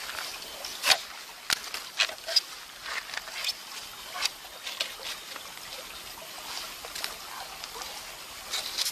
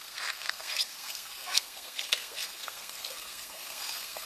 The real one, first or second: first